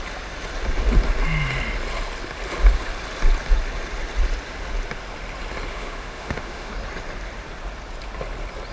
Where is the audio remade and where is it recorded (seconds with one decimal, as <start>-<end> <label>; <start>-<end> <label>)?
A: 0.0-5.7 recorded; 5.7-6.7 remade; 6.7-8.7 recorded